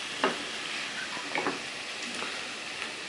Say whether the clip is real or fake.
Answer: real